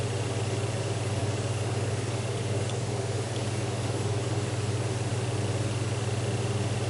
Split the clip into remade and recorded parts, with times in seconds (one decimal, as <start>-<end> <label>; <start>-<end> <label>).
0.0-1.2 recorded; 1.2-4.5 remade; 4.5-6.9 recorded